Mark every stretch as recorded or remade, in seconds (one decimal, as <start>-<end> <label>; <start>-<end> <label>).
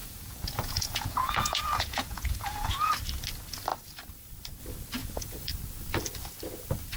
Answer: 0.0-2.9 remade; 2.9-5.0 recorded; 5.0-5.5 remade; 5.5-7.0 recorded